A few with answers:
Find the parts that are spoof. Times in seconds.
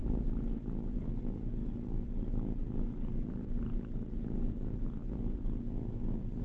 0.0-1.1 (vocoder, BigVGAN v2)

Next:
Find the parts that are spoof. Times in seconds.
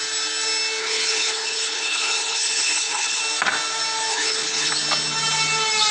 0.8-3.2 (codec, HILCodec); 4.1-4.7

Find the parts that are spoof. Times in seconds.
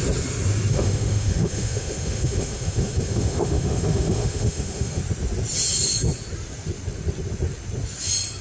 0.7-5.0 (autoencoder, DAC-VAE)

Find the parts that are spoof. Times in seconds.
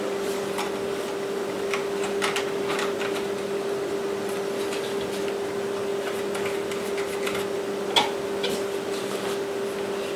none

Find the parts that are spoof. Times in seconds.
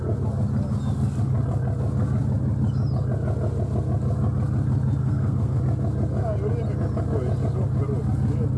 5.0-5.6 (codec, SNAC)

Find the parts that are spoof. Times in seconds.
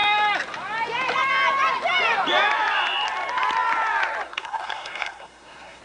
4.3-5.8 (codec, SNAC)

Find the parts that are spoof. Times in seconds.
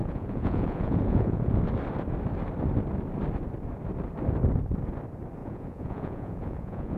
0.0-1.6 (vocoder, Vocos); 5.4-7.0